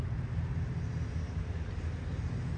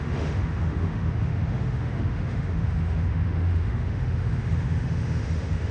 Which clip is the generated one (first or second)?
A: second